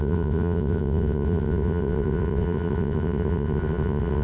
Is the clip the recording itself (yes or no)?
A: no